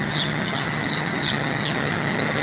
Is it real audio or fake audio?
fake